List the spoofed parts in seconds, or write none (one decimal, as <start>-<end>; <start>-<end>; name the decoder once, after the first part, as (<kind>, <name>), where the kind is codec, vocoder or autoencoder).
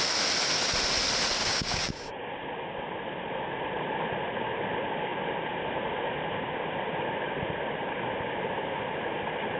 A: 1.4-2.3 (codec, DAC)